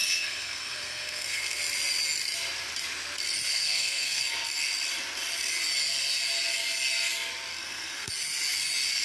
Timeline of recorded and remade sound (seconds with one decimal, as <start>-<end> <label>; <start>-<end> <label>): 0.0-1.6 remade; 1.6-3.5 recorded; 3.5-4.2 remade; 4.2-7.5 recorded; 7.5-8.1 remade; 8.1-9.0 recorded